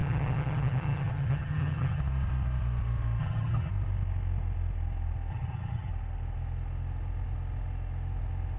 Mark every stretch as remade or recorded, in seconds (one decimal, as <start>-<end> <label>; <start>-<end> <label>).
0.0-2.0 remade; 2.0-3.2 recorded; 3.2-3.7 remade; 3.7-5.3 recorded; 5.3-5.9 remade; 5.9-8.6 recorded